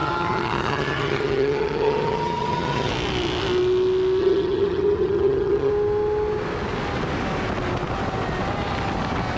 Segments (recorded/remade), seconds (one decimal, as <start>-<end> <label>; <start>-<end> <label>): 0.0-2.9 remade; 2.9-4.2 recorded; 4.2-5.7 remade; 5.7-9.4 recorded